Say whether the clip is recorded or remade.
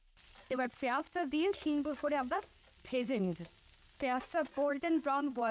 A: recorded